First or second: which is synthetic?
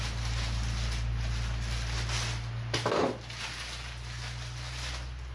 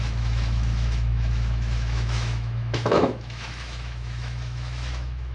second